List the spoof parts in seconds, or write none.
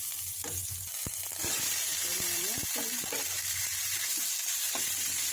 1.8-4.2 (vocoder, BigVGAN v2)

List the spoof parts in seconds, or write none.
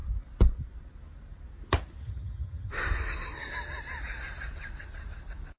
2.0-2.7 (vocoder, HiFi-GAN)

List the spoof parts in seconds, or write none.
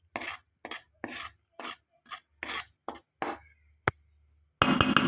none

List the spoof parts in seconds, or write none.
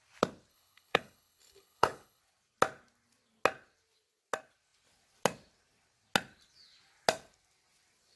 0.5-2.2 (codec, HILCodec)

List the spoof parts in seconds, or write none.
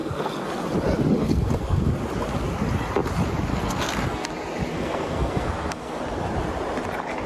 0.0-0.5 (codec, SNAC); 1.2-1.9; 3.5-4.3; 4.7-6.0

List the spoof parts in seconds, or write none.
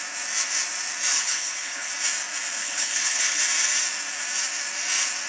1.1-1.9 (codec, HILCodec); 2.6-3.4